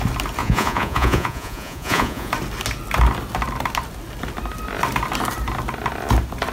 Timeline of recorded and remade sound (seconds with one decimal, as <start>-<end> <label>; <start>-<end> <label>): 0.0-0.4 recorded; 0.4-2.3 remade; 2.3-6.5 recorded